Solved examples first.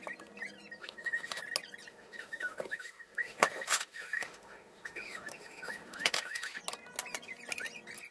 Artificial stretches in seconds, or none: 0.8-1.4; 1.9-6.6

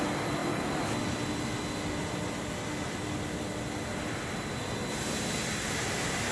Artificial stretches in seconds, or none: none

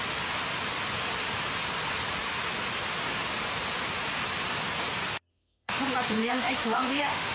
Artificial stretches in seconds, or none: 5.3-5.8; 6.2-7.3

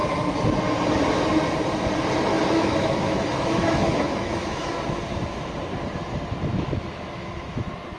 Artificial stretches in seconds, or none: 2.3-4.7; 6.5-7.6

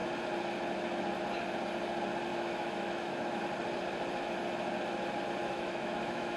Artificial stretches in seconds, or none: 2.3-3.4; 5.4-6.4

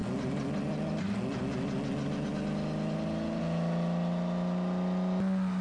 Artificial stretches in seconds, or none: none

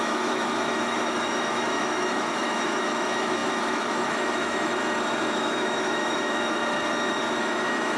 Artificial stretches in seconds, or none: 0.0-4.7; 5.4-6.6; 7.4-8.0

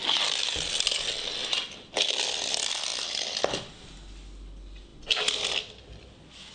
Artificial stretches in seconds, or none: none